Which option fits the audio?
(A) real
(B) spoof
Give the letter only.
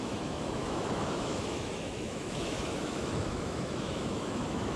B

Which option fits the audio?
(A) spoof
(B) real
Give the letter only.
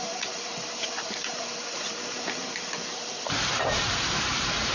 A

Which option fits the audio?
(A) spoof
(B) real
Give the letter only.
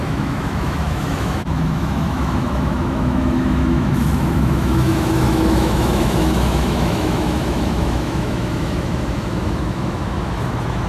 A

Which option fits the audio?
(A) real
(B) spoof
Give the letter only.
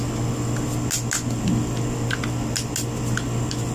A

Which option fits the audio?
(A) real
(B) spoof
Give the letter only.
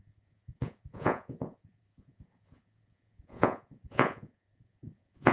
B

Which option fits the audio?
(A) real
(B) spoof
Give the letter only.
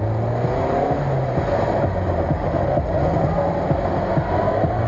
A